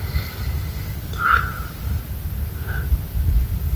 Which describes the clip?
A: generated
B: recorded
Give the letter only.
B